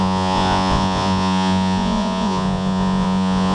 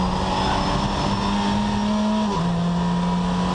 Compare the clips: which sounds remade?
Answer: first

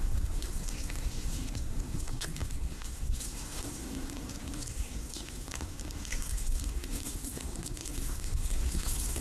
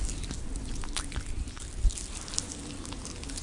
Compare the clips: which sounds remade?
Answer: first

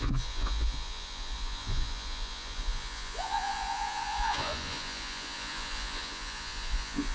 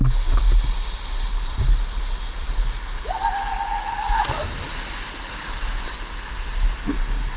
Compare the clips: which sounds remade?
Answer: first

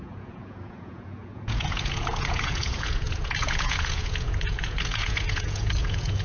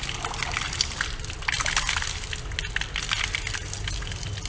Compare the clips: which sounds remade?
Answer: first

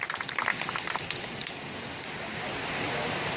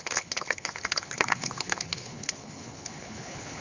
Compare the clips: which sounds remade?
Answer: second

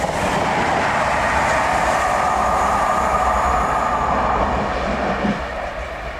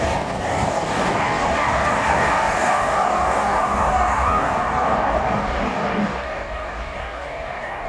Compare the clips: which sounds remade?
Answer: second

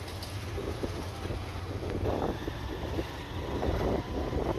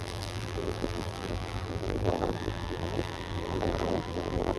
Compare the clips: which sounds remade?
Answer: second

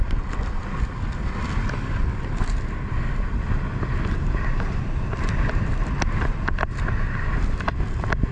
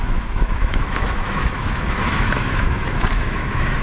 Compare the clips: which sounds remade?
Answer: second